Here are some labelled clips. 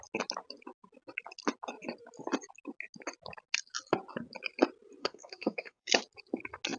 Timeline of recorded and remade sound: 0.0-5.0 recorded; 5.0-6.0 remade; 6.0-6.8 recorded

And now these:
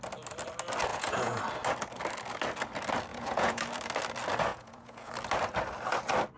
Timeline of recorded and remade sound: 0.0-0.9 recorded; 0.9-1.4 remade; 1.4-3.1 recorded; 3.1-3.6 remade; 3.6-4.5 recorded; 4.5-5.1 remade; 5.1-6.4 recorded

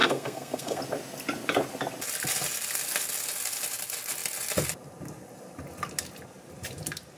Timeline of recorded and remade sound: 0.0-0.8 remade; 0.8-7.2 recorded

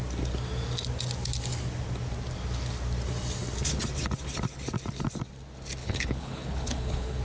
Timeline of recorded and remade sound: 0.0-5.8 recorded; 5.8-7.2 remade

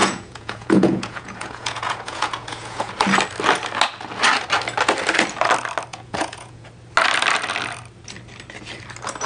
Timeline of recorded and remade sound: 0.0-2.9 remade; 2.9-5.9 recorded; 5.9-6.7 remade; 6.7-9.3 recorded